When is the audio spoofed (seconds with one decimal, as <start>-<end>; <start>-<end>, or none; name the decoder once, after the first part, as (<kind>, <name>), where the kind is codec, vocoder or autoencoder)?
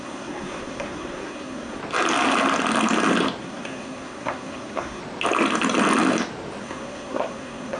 0.0-1.8 (codec, SNAC); 3.4-5.0; 6.6-7.8